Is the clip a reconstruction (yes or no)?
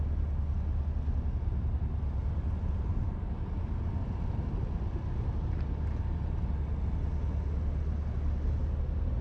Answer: no